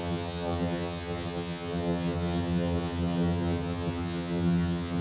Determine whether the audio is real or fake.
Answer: fake